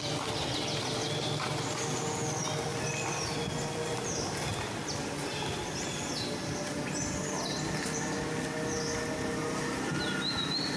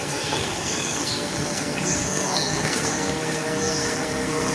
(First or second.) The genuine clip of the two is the first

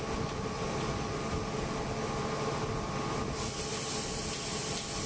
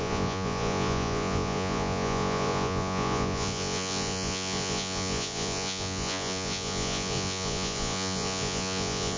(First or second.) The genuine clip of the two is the first